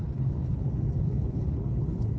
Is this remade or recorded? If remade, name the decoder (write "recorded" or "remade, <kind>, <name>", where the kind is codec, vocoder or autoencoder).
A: remade, codec, HILCodec